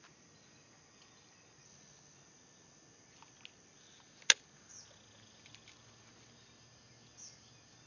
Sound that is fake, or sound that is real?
real